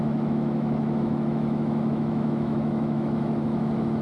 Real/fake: fake